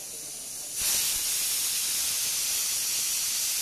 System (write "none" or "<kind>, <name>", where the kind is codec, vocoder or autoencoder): none